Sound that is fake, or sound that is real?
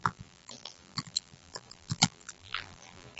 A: fake